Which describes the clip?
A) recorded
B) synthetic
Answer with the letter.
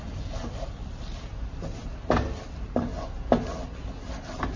A